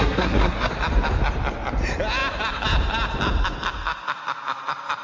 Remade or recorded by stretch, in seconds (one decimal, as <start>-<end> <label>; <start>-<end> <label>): 0.0-0.7 remade; 0.7-5.0 recorded